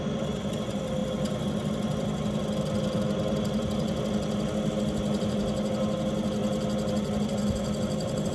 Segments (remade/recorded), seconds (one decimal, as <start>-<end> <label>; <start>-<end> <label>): 0.0-8.3 recorded